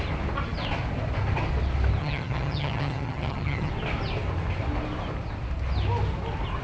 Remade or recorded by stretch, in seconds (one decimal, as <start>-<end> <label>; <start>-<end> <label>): 0.0-2.0 recorded; 2.0-3.7 remade; 3.7-6.6 recorded